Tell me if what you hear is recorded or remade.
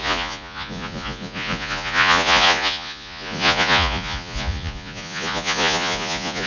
remade